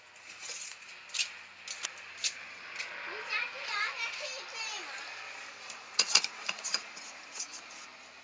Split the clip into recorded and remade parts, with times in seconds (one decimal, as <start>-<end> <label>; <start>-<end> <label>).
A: 0.0-0.9 remade; 0.9-5.5 recorded; 5.5-7.5 remade; 7.5-8.2 recorded